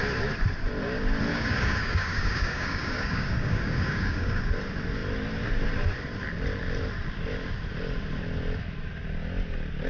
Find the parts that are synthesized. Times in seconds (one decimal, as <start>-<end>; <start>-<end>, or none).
1.3-4.4